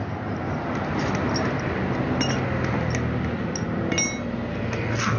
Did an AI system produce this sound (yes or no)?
no